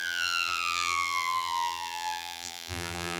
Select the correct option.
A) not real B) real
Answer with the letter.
A